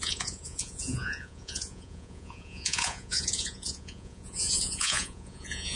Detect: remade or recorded remade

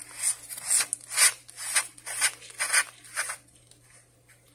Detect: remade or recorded recorded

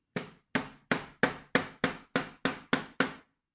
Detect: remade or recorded recorded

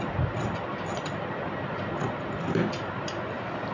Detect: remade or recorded recorded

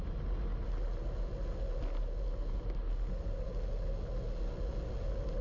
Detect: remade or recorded recorded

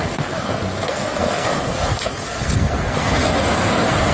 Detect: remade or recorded remade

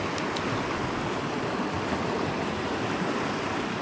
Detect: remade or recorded recorded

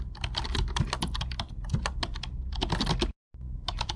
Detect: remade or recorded recorded